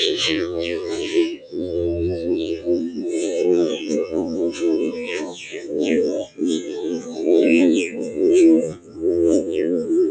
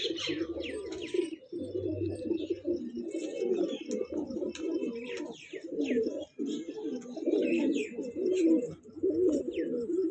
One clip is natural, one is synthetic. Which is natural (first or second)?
second